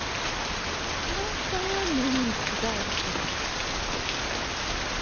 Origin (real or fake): real